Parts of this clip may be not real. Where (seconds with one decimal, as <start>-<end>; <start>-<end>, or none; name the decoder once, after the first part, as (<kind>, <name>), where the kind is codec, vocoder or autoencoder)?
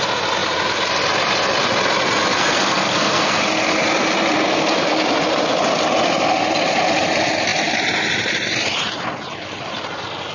2.3-3.4 (codec, SNAC)